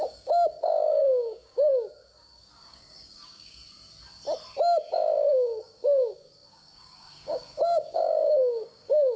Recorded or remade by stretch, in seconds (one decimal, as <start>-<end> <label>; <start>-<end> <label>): 0.0-3.6 remade; 3.6-4.9 recorded; 4.9-9.2 remade